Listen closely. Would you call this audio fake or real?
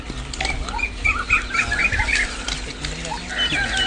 real